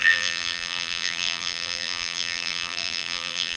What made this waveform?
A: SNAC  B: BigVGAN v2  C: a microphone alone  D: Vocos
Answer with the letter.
B